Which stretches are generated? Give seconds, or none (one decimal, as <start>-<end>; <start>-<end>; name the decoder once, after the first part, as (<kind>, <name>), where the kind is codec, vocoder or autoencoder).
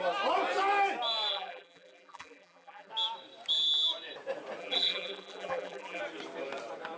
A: 1.3-2.9 (vocoder, BigVGAN v2); 4.6-6.0